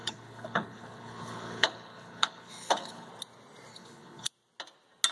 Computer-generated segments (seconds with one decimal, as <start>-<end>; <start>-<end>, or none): 0.0-3.1; 3.7-4.3